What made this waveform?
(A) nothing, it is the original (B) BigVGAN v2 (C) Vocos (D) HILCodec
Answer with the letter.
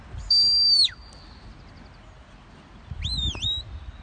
A